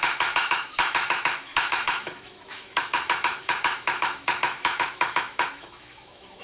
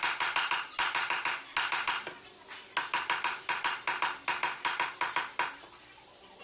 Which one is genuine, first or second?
second